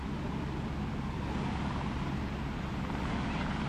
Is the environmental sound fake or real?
real